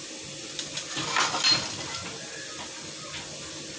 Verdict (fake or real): real